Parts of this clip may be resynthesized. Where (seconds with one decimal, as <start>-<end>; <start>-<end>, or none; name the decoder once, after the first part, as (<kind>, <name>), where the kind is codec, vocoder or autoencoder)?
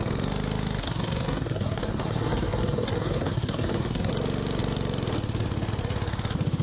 0.8-4.1 (codec, SNAC)